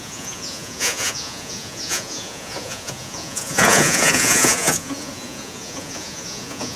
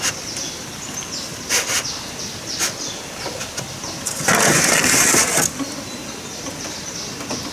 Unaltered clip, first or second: second